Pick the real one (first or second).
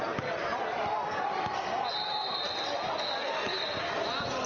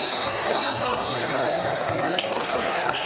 first